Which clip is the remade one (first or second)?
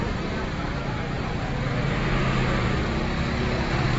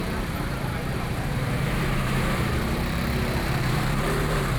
second